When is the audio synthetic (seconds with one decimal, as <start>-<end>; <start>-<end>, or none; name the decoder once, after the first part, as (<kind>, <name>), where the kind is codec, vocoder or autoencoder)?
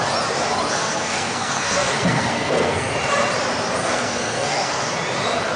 0.8-2.9 (codec, SNAC); 3.8-4.9